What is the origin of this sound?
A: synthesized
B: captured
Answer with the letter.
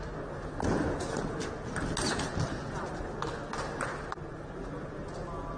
B